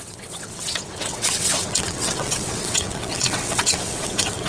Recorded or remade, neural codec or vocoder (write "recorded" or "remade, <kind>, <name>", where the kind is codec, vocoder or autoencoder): remade, vocoder, WaveNeXt